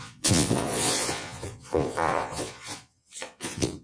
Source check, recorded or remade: remade